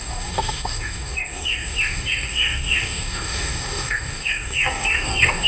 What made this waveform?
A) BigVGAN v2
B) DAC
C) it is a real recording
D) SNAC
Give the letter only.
B